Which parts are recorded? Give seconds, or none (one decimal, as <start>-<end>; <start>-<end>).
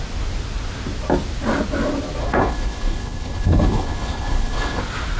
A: 0.0-2.2; 4.8-5.2